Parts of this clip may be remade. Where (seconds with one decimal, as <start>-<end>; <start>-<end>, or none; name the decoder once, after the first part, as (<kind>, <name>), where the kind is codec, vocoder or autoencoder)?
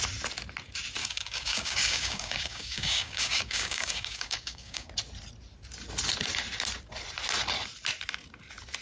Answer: 1.0-4.9 (codec, DAC)